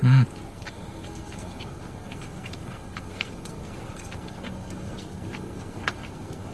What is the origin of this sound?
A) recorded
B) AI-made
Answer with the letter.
B